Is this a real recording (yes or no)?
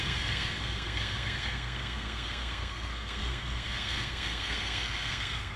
no